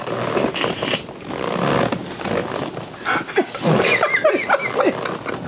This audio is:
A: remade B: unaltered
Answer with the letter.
B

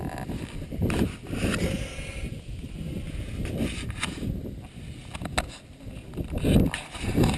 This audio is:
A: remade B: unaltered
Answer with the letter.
B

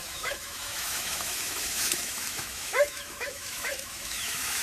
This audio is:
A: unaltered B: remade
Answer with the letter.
B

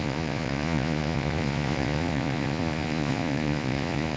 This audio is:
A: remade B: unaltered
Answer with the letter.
A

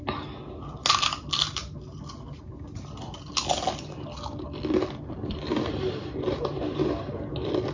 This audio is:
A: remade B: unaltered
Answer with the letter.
B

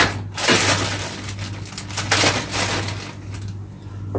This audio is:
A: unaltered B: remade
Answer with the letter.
A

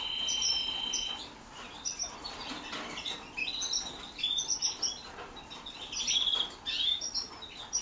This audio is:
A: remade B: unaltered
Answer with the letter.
B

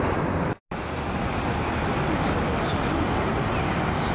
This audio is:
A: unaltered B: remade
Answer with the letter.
A